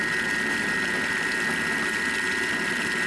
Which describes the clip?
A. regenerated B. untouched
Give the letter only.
B